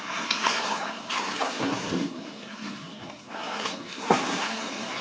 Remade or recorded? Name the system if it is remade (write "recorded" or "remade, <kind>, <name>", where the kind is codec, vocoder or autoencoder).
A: remade, codec, SNAC